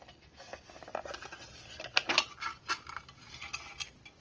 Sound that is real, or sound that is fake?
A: real